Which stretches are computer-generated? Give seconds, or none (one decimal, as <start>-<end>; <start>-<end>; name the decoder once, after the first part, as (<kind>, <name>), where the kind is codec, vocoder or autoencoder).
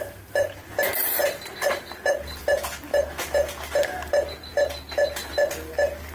none